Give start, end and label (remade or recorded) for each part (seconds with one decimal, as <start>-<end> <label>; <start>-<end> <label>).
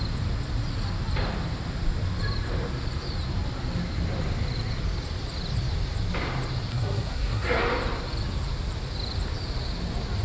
0.0-6.7 recorded; 6.7-7.6 remade; 7.6-10.2 recorded